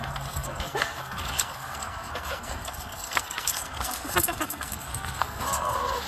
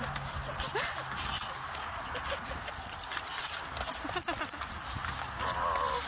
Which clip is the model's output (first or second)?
first